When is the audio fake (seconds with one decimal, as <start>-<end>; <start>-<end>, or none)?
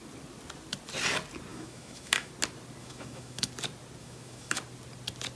1.5-2.3; 2.8-3.5; 4.0-4.6